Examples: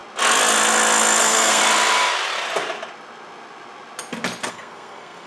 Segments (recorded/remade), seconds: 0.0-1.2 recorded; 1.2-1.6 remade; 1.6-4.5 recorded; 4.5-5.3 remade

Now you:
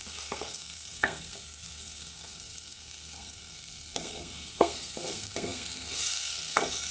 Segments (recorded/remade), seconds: 0.0-6.9 remade